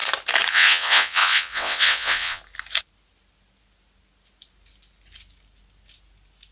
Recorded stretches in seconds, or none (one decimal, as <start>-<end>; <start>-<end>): 0.0-0.5; 2.4-6.5